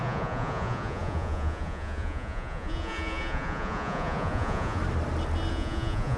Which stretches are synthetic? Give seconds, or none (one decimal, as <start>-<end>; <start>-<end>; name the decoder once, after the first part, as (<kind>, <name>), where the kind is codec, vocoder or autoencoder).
0.0-4.8 (vocoder, Vocos); 5.5-6.2